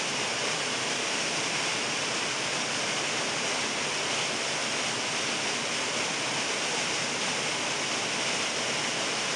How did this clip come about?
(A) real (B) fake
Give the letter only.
A